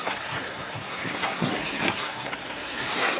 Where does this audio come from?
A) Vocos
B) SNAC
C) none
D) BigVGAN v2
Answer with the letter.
B